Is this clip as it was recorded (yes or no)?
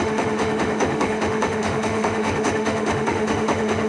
no